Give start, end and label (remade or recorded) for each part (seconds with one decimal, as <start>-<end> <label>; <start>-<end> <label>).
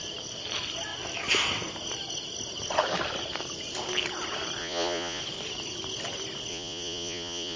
0.0-4.6 recorded; 4.6-5.2 remade; 5.2-6.5 recorded; 6.5-7.6 remade